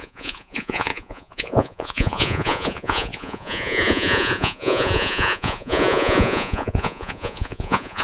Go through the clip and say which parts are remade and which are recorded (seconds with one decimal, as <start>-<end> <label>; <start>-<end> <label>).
0.0-8.0 remade